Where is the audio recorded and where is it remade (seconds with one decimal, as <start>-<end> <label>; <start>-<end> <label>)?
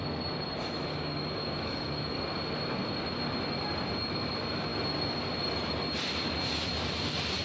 0.0-0.9 recorded; 0.9-2.2 remade; 2.2-7.4 recorded